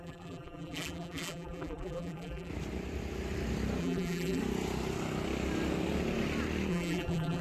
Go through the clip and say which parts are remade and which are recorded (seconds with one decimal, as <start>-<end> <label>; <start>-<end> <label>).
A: 0.0-2.5 remade; 2.5-3.8 recorded; 3.8-4.4 remade; 4.4-6.7 recorded; 6.7-7.4 remade